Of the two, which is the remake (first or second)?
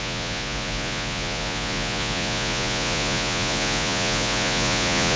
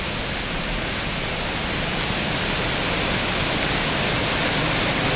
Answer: first